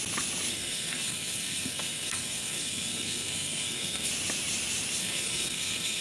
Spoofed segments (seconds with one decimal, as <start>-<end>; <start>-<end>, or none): 0.5-4.1; 5.0-6.0